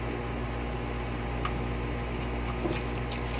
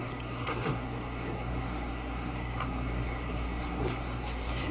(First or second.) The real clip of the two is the first